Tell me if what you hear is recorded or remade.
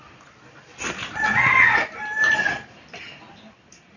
recorded